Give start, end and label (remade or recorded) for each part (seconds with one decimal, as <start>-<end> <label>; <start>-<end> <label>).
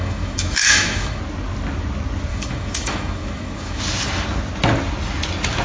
0.0-1.2 remade; 1.2-2.3 recorded; 2.3-3.8 remade; 3.8-5.6 recorded